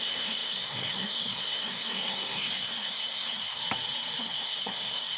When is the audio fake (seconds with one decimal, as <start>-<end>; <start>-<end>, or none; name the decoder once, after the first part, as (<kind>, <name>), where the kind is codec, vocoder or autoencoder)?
0.0-3.6 (codec, SNAC); 4.2-5.2